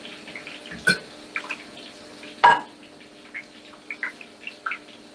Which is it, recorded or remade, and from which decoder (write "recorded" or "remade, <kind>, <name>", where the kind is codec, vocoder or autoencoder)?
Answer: recorded